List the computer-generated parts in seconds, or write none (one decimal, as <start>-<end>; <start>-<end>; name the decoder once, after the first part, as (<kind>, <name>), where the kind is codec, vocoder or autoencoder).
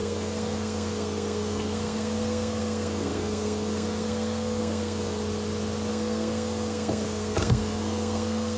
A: 0.0-5.2 (codec, SNAC); 5.9-8.6